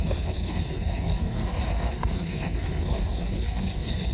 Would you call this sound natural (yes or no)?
no